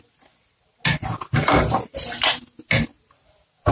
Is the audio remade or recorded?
recorded